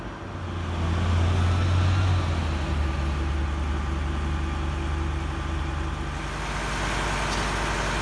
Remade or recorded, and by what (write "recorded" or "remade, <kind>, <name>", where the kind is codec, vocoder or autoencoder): recorded